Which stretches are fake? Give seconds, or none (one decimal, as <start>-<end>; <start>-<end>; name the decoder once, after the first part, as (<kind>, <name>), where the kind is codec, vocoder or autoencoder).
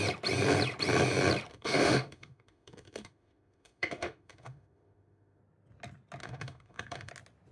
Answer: 1.5-5.4 (autoencoder, DAC-VAE); 6.2-7.1